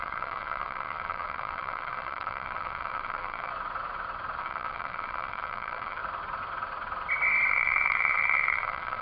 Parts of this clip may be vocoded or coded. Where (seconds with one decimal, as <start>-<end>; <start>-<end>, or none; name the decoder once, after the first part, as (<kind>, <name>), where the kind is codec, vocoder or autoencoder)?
0.0-3.5 (vocoder, WaveNeXt); 4.4-6.0; 7.5-9.0